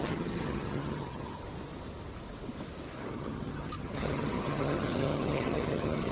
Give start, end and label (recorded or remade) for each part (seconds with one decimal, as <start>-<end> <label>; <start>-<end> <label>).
0.0-1.4 remade; 1.4-3.1 recorded; 3.1-6.1 remade